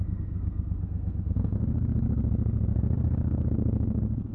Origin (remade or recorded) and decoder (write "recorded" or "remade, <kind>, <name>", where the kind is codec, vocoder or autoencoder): remade, codec, SNAC